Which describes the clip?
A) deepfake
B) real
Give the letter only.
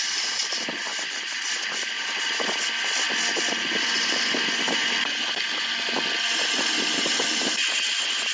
B